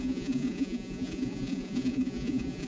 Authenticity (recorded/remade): remade